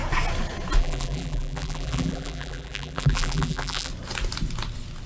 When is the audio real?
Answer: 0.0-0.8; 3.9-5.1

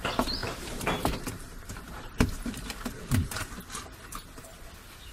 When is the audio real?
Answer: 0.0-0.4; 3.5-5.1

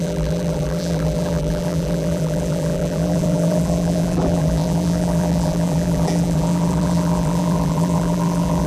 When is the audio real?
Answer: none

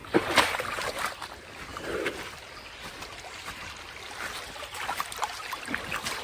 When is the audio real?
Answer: 1.1-6.2